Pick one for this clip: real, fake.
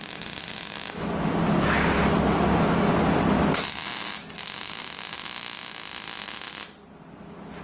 real